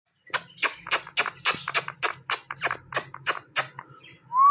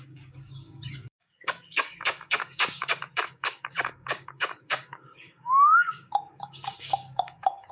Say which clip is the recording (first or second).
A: first